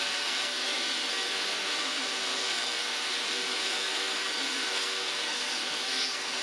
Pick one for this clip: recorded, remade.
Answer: remade